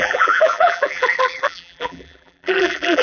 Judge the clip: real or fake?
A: fake